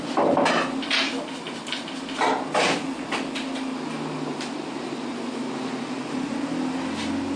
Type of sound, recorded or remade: recorded